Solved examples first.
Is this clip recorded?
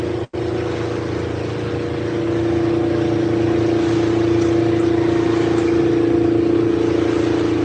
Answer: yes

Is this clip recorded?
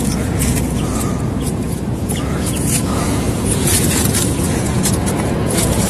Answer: no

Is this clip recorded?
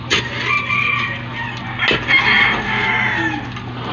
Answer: yes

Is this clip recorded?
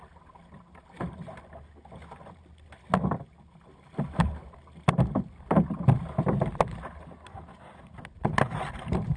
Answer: yes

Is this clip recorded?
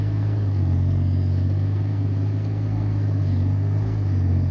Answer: no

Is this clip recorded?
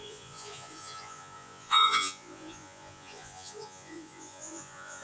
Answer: no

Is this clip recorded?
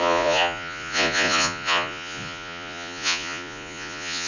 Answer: no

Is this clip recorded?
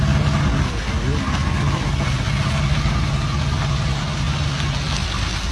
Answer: yes